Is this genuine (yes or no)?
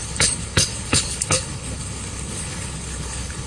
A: no